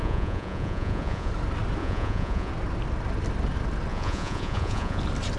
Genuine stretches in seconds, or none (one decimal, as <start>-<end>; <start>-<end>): 1.3-1.8; 2.5-3.9; 5.0-5.4